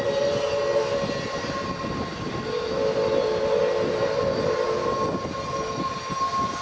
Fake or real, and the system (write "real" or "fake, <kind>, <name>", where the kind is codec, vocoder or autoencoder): real